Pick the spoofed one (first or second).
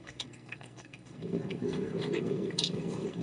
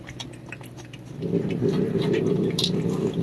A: first